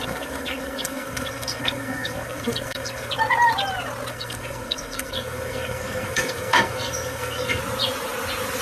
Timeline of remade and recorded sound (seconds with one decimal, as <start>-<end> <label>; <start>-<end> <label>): 0.0-3.1 remade; 3.1-4.1 recorded; 4.1-7.6 remade; 7.6-8.6 recorded